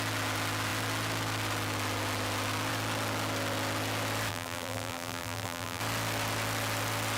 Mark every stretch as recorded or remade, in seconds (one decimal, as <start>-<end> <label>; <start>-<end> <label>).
0.0-4.3 recorded; 4.3-5.8 remade; 5.8-7.2 recorded